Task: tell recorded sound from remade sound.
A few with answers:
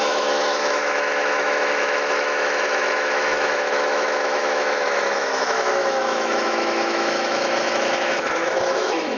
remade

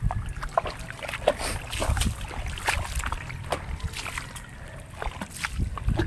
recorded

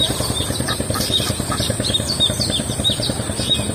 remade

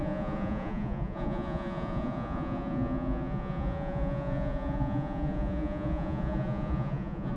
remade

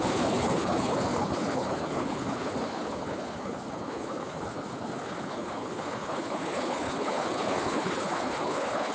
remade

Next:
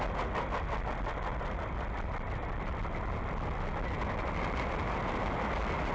recorded